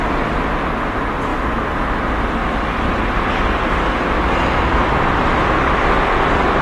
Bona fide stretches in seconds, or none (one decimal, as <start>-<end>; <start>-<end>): 0.0-2.4